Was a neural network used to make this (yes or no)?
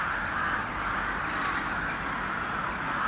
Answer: no